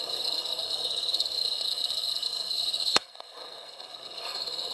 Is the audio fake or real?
fake